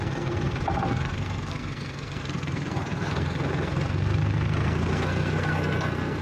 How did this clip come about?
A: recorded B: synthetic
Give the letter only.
B